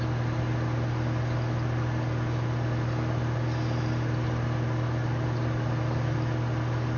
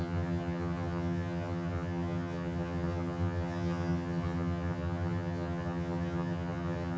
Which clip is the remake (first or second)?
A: second